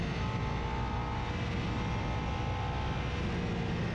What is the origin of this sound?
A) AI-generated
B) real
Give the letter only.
B